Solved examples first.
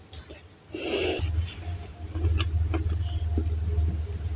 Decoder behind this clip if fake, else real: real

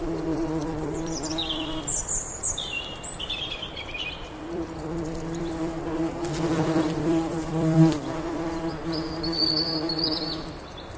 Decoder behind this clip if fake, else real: fake, vocoder, BigVGAN v2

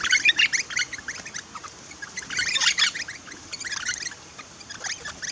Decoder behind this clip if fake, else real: real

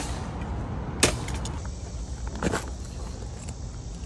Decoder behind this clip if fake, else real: real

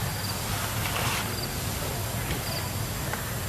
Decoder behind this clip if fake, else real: real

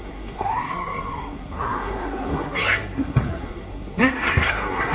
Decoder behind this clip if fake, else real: fake, codec, SNAC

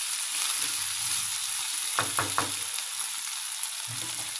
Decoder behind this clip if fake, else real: real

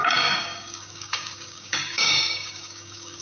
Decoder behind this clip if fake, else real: fake, codec, DAC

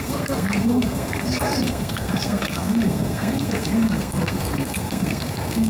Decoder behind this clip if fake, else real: fake, codec, SNAC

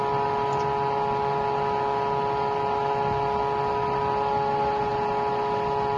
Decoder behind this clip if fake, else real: real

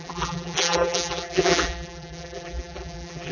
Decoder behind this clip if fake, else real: fake, vocoder, BigVGAN v2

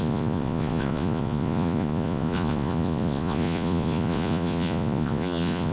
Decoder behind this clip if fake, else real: fake, vocoder, Vocos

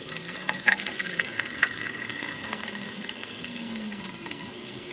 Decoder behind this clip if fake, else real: fake, codec, SNAC